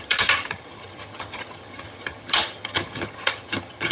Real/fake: fake